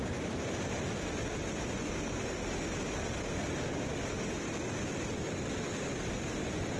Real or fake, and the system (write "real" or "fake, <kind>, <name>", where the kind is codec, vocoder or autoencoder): real